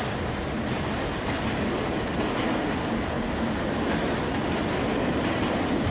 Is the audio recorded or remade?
recorded